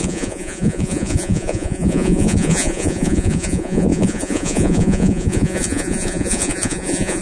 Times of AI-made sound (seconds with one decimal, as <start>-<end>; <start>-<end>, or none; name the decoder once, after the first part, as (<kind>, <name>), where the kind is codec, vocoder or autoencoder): 0.0-7.2 (vocoder, Vocos)